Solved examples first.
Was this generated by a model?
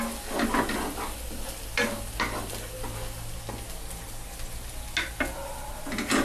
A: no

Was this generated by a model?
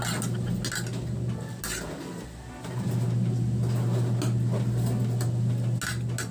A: no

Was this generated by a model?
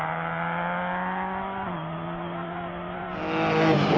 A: no